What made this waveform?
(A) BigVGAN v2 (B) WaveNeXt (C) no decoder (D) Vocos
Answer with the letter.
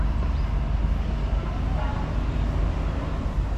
C